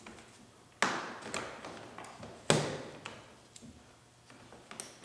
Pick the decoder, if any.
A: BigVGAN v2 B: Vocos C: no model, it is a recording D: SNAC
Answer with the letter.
C